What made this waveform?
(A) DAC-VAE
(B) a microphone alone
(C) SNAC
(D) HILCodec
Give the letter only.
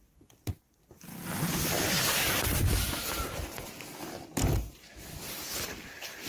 B